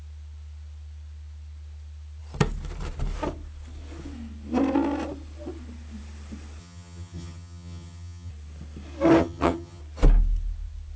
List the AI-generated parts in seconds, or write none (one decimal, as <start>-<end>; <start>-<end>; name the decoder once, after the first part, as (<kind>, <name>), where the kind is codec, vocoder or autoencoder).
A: 6.6-8.3 (vocoder, HiFi-GAN); 9.2-9.8